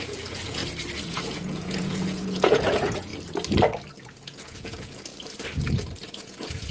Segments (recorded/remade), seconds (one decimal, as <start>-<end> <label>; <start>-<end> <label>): 0.0-0.6 remade; 0.6-1.1 recorded; 1.1-3.1 remade; 3.1-4.2 recorded; 4.2-5.1 remade; 5.1-6.1 recorded; 6.1-6.7 remade